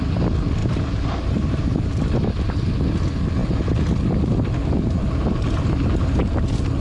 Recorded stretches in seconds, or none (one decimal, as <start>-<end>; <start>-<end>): 0.0-0.6; 1.9-6.8